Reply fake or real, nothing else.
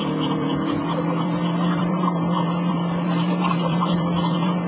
fake